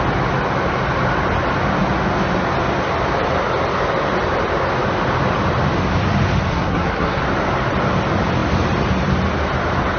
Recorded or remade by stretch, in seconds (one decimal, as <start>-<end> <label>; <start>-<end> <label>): 0.0-6.5 recorded; 6.5-7.2 remade; 7.2-10.0 recorded